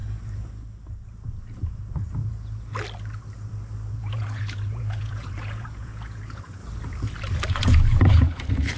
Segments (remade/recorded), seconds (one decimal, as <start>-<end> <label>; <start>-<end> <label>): 0.0-3.9 recorded; 3.9-6.6 remade; 6.6-7.5 recorded; 7.5-8.8 remade